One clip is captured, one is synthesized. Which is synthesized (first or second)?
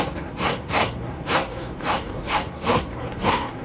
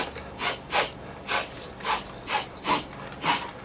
first